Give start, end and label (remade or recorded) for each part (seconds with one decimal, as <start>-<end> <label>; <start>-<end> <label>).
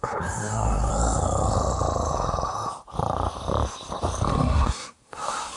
0.0-0.9 remade; 0.9-4.3 recorded; 4.3-5.6 remade